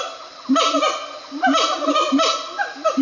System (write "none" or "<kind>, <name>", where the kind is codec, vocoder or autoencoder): none